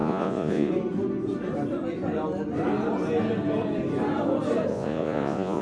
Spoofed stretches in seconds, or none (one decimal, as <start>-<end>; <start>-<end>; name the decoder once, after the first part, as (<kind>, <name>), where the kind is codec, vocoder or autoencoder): 0.0-0.7 (vocoder, Vocos); 4.7-5.6